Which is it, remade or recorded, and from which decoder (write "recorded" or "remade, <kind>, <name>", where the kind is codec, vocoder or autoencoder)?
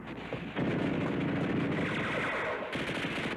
recorded